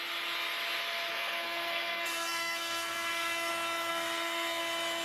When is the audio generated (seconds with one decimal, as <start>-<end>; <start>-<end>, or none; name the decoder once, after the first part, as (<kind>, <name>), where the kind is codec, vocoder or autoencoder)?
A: 1.1-3.5 (codec, SNAC); 3.9-4.6